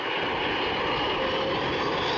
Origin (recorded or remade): recorded